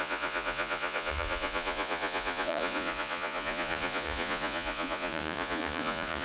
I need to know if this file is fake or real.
fake